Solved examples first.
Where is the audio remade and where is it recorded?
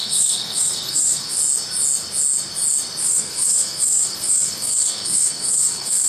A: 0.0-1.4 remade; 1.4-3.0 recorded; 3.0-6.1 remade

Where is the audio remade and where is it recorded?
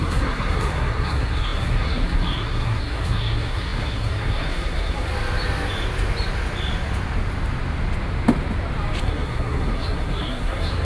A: 0.0-5.1 remade; 5.1-9.0 recorded; 9.0-10.8 remade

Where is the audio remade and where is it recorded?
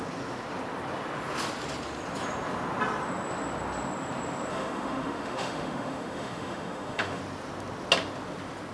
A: 0.0-4.5 recorded; 4.5-7.2 remade; 7.2-8.7 recorded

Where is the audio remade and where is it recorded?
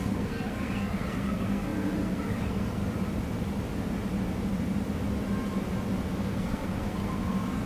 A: 0.0-2.8 remade; 2.8-6.2 recorded; 6.2-7.7 remade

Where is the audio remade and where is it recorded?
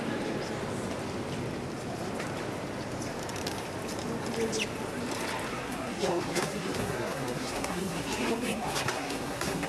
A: 0.0-5.5 recorded; 5.5-9.7 remade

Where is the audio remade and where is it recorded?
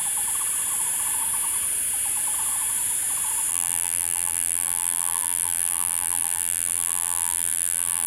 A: 0.0-3.5 recorded; 3.5-8.1 remade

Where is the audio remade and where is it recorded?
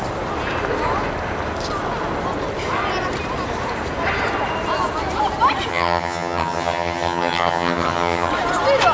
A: 0.0-5.7 recorded; 5.7-8.3 remade; 8.3-8.9 recorded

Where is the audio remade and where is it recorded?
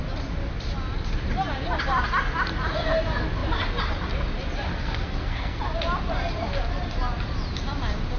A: 0.0-4.7 recorded; 4.7-5.6 remade; 5.6-8.2 recorded